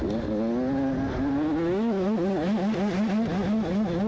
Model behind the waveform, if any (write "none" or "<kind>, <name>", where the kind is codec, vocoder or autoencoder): none